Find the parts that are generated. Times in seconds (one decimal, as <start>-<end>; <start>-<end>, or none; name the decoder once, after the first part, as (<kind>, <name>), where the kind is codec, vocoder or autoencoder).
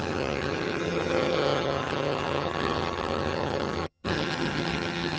0.0-5.2 (vocoder, HiFi-GAN)